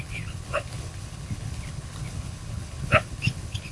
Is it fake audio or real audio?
fake